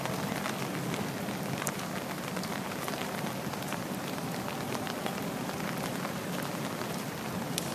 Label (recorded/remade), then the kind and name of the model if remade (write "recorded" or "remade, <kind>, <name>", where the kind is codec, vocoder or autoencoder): remade, vocoder, BigVGAN v2